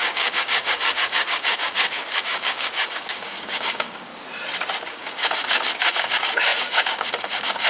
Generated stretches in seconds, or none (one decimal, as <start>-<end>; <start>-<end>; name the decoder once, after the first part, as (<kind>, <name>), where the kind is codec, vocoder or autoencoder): 0.0-4.1 (codec, DAC); 4.9-7.7